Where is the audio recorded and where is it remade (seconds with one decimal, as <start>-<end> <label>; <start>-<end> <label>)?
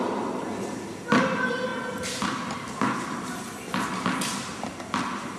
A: 0.0-5.4 recorded